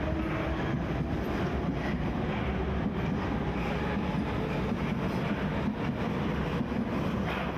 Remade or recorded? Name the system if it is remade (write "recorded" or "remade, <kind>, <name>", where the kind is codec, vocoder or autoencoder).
recorded